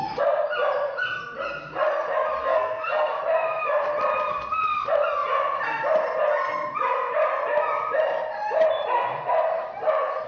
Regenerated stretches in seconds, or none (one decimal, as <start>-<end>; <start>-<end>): 2.4-3.2